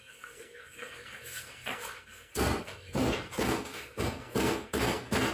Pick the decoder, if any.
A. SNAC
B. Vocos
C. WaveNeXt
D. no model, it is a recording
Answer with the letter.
A